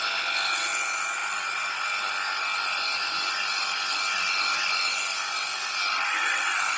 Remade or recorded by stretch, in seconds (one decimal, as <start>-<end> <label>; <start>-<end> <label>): 0.0-6.8 recorded